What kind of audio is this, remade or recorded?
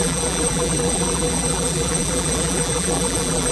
remade